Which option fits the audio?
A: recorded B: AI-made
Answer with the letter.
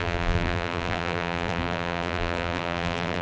B